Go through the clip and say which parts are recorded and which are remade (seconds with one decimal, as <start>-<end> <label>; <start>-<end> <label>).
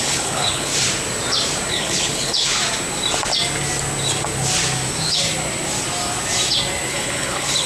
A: 0.0-0.7 remade; 0.7-1.7 recorded; 1.7-2.6 remade; 2.6-6.9 recorded; 6.9-7.7 remade